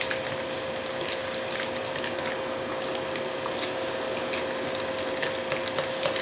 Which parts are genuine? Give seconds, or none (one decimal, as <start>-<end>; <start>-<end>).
0.0-6.2